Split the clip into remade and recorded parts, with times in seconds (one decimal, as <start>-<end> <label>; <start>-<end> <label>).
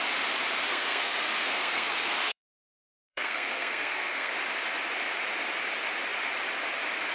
0.0-0.7 recorded; 0.7-4.3 remade; 4.3-7.1 recorded